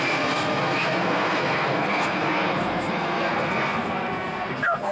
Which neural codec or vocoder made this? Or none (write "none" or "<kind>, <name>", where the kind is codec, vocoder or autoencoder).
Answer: codec, SNAC